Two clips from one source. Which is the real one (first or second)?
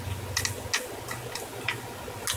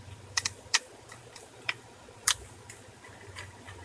first